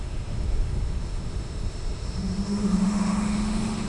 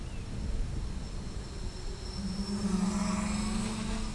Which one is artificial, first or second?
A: first